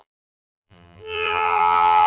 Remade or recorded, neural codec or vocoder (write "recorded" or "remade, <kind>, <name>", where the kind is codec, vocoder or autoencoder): remade, vocoder, BigVGAN v2